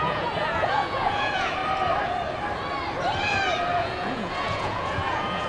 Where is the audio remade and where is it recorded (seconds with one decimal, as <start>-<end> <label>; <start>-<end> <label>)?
0.0-1.6 remade; 1.6-3.7 recorded; 3.7-5.5 remade